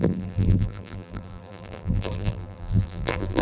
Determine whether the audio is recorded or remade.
remade